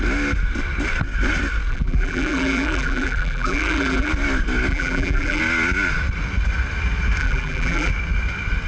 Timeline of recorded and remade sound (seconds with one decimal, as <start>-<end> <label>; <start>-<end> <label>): 0.0-1.7 recorded; 1.7-4.1 remade; 4.1-4.7 recorded; 4.7-5.4 remade; 5.4-7.2 recorded; 7.2-7.9 remade; 7.9-8.7 recorded